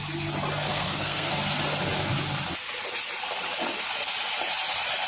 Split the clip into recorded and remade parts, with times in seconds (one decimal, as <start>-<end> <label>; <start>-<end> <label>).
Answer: 0.0-0.7 recorded; 0.7-1.3 remade; 1.3-5.1 recorded